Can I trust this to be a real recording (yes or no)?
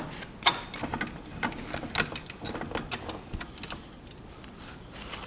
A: yes